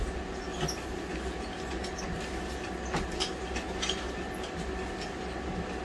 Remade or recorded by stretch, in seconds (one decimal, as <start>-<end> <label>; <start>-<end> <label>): 0.0-5.8 recorded